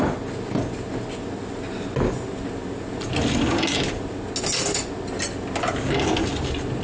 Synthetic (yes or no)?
no